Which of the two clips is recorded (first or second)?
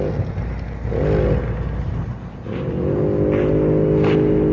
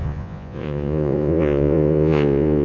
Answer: first